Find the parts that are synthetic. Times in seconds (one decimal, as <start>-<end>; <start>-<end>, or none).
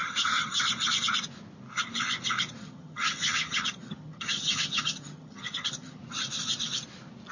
0.0-0.6; 2.6-6.0